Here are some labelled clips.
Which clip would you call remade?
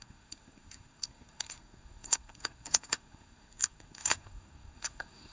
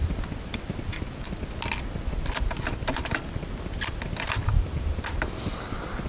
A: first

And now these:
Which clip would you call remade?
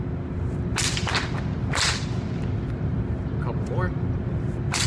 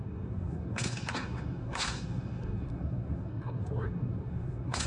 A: second